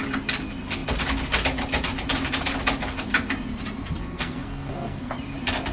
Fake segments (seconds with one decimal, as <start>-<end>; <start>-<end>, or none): 4.0-5.1